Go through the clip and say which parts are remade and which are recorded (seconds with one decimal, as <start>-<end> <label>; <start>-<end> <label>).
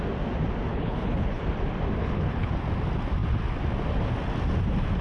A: 0.0-0.7 recorded; 0.7-1.4 remade; 1.4-2.0 recorded; 2.0-2.5 remade; 2.5-5.0 recorded